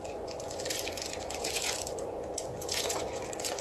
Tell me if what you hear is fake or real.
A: fake